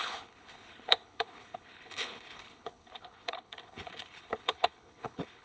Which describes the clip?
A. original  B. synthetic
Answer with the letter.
B